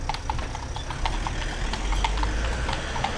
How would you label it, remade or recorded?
recorded